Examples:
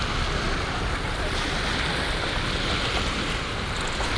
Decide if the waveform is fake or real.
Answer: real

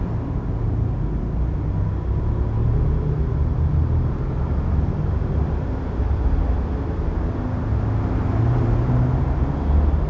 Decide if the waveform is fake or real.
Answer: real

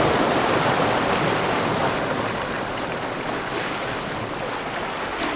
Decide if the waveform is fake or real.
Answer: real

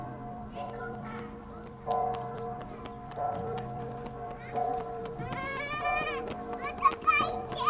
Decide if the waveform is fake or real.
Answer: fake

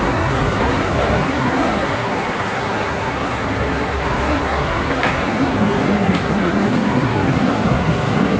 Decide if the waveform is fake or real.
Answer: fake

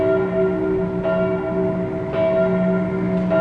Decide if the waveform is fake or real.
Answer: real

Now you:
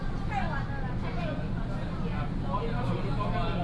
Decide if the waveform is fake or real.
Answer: real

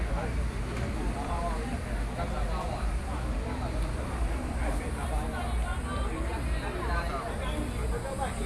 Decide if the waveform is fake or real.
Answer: real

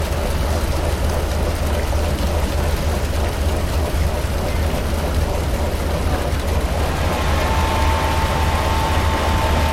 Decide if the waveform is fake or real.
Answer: real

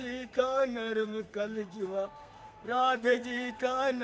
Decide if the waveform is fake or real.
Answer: fake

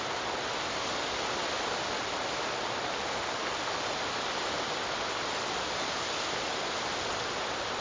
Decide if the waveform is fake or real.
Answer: real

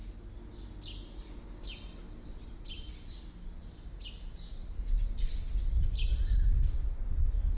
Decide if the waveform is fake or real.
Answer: real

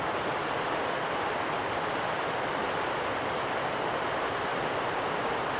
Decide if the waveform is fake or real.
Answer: real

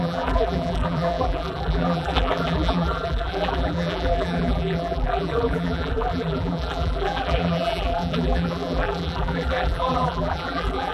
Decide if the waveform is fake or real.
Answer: fake